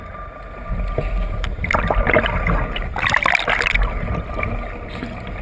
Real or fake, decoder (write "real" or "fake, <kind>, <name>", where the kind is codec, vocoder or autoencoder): real